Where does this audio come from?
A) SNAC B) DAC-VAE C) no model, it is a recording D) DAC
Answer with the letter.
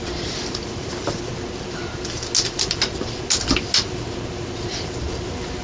C